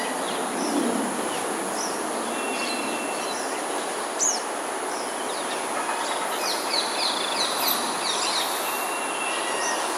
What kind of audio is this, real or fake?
real